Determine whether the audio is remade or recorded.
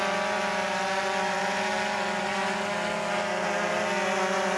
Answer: recorded